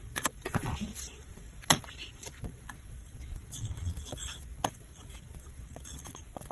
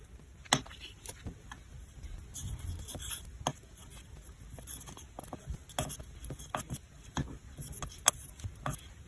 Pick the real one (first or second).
second